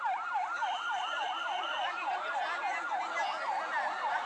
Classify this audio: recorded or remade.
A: recorded